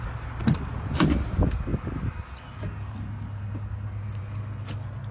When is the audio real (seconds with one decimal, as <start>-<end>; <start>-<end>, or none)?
0.0-5.1